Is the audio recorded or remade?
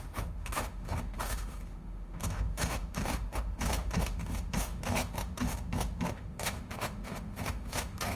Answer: remade